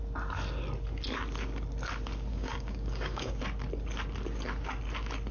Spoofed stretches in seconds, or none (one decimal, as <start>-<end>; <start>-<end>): 2.3-3.4